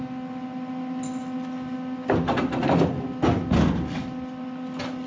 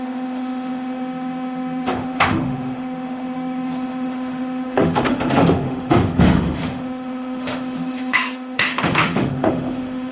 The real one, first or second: first